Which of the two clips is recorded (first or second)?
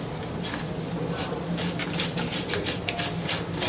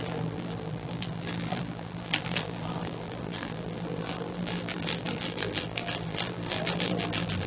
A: first